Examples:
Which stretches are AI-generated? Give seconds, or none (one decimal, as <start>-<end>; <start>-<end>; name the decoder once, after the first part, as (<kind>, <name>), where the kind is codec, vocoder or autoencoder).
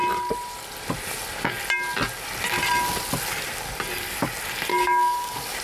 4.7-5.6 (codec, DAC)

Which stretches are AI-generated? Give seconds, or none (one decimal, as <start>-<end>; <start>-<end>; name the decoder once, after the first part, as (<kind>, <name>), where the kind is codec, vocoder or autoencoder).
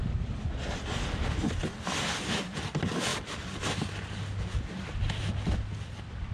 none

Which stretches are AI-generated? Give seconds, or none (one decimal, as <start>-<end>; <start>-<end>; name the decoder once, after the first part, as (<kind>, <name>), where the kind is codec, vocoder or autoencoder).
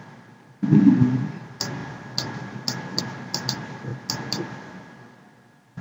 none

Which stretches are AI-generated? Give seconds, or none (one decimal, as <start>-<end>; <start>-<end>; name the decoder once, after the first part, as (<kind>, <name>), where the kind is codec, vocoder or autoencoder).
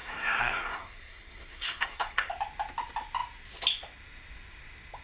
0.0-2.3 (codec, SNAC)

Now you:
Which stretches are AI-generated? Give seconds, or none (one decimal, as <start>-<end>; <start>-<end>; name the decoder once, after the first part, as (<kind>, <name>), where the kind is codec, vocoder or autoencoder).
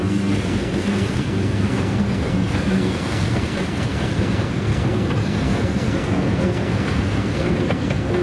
0.0-8.2 (codec, SNAC)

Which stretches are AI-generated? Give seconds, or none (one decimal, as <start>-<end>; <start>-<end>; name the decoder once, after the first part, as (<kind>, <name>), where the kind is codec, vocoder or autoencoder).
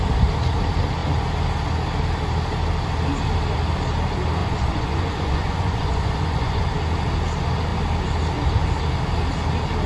4.4-6.6 (vocoder, Vocos)